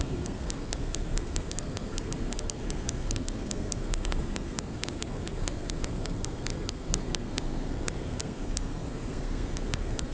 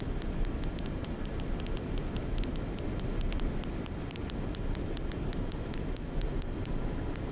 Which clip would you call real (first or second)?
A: second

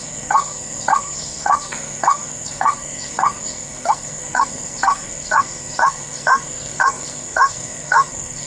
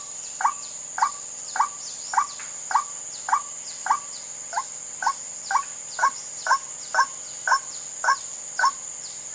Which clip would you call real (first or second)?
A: second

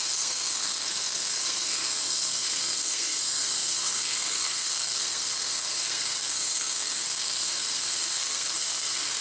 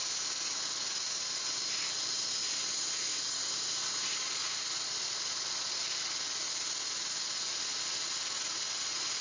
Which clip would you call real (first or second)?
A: second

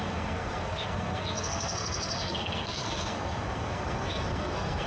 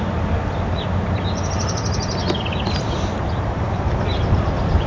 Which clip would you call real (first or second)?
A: second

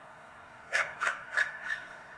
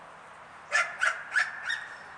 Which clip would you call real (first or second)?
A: second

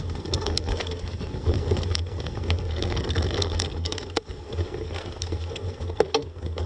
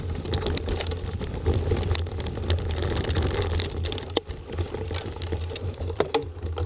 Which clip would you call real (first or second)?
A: second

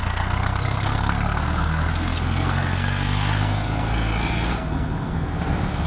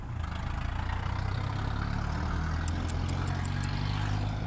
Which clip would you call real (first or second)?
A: second